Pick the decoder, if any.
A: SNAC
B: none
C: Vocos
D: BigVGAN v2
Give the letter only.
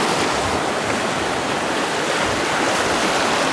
D